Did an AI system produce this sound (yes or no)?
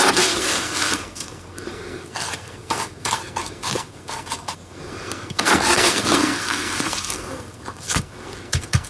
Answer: yes